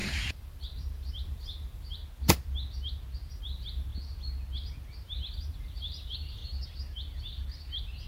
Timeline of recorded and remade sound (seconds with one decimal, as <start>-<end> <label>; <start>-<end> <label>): 0.0-2.0 remade; 2.0-3.3 recorded; 3.3-3.9 remade; 3.9-5.3 recorded; 5.3-6.4 remade; 6.4-8.1 recorded